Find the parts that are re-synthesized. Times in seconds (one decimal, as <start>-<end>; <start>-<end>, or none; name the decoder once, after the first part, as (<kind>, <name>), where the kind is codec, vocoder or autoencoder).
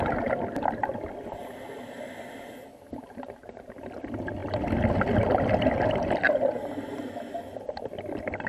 2.7-3.8 (vocoder, BigVGAN v2)